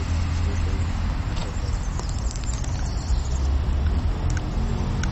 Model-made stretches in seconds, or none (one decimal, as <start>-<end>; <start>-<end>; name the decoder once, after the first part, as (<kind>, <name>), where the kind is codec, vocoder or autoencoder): none